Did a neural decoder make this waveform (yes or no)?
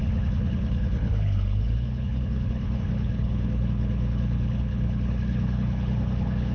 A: yes